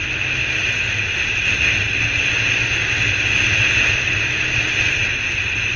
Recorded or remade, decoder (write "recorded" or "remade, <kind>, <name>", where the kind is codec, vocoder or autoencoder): recorded